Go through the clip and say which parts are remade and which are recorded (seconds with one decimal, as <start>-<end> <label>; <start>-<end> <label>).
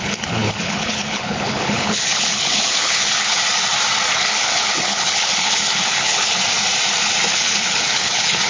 0.0-3.4 remade; 3.4-4.1 recorded; 4.1-6.4 remade; 6.4-7.3 recorded; 7.3-8.5 remade